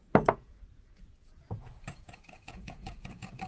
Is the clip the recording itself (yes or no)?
no